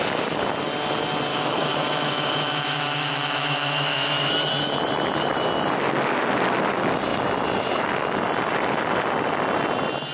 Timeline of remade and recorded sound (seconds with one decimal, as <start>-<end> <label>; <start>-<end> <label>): 0.0-1.3 recorded; 1.3-4.3 remade; 4.3-10.1 recorded